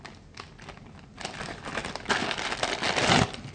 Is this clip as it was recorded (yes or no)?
yes